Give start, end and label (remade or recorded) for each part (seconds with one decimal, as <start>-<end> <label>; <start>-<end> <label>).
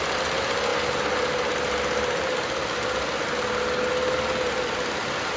0.0-5.4 recorded